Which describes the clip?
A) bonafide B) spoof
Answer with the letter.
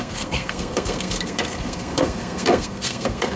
B